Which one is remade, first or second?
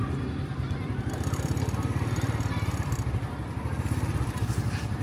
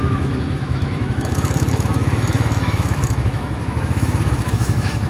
second